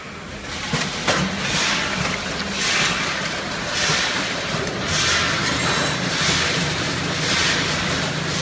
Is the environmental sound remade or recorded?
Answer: recorded